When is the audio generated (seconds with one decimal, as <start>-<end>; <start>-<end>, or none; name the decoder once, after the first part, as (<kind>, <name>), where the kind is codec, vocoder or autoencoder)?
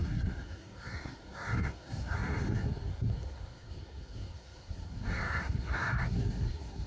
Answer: 0.0-6.9 (codec, SNAC)